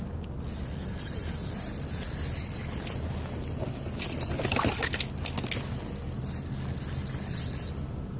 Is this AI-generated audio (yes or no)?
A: no